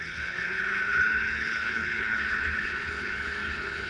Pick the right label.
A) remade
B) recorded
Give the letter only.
A